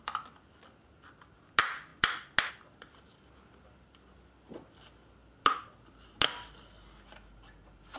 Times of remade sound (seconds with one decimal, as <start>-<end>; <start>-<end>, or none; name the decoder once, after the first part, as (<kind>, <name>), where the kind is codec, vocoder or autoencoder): none